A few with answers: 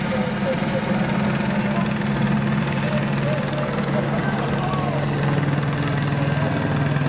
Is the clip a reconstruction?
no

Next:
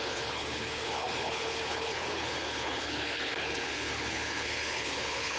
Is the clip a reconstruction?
yes